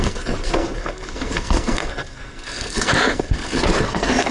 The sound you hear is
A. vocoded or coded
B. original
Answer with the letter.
A